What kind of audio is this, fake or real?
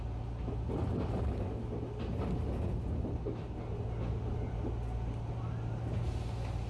real